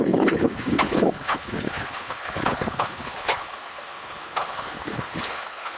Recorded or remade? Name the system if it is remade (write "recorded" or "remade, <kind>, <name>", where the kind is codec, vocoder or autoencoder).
remade, codec, HILCodec